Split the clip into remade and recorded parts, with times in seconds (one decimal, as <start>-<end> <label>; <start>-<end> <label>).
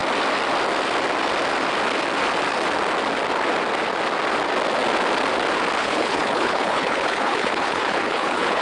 0.0-5.8 recorded; 5.8-8.6 remade